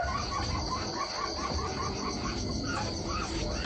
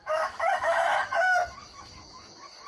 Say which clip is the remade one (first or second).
second